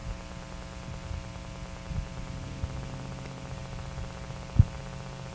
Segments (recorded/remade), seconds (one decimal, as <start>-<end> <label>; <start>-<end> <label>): 0.0-5.3 recorded